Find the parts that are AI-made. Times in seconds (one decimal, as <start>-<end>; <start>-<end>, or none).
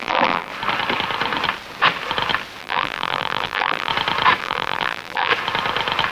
0.0-0.5; 2.6-3.9; 4.4-5.3